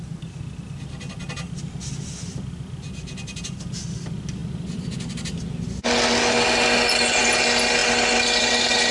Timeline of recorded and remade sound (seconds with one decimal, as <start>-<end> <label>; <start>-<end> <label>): 0.0-8.9 recorded